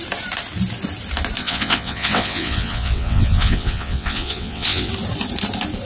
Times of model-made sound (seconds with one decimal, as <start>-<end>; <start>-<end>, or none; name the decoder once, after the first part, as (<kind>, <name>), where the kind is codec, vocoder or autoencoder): 1.4-4.9 (vocoder, WaveNeXt)